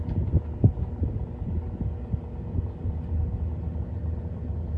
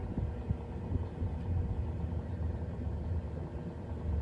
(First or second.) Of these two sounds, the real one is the first